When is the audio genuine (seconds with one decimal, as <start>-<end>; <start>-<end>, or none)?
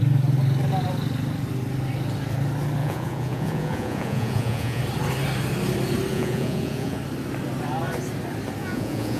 0.0-2.8; 4.8-6.1; 7.0-8.6